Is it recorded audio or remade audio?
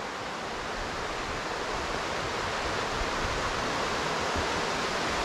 recorded